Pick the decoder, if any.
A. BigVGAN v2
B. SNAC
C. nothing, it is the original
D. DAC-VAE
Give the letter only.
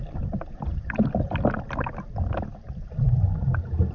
C